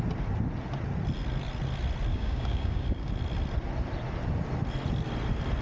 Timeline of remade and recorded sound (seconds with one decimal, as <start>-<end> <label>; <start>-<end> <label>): 0.0-2.1 recorded; 2.1-3.1 remade; 3.1-5.6 recorded